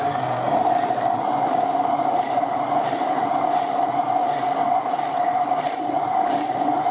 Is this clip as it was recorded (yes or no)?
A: yes